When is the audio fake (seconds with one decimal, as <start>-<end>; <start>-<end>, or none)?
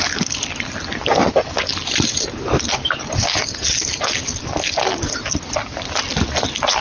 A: none